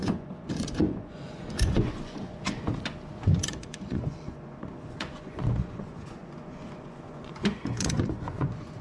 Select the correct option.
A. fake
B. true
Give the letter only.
A